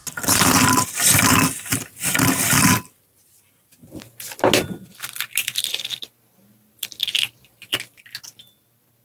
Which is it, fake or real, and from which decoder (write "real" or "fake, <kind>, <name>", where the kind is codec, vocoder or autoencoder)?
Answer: real